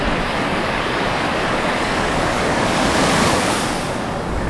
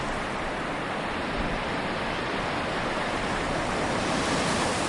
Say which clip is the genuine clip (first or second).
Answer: second